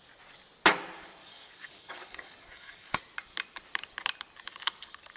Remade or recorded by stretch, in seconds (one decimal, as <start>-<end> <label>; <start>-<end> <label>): 0.0-1.2 recorded; 1.2-3.0 remade; 3.0-5.2 recorded